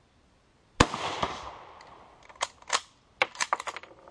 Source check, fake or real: real